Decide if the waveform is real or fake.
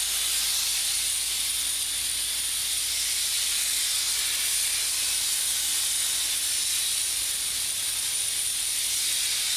real